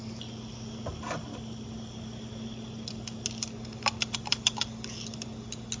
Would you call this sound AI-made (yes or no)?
no